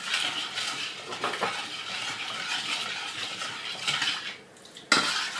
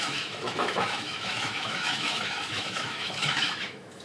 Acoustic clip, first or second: first